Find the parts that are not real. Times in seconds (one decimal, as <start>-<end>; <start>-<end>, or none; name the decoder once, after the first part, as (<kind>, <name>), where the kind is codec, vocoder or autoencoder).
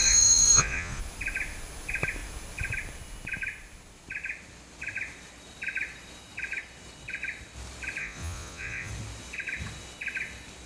0.0-1.0 (vocoder, Vocos); 8.0-8.9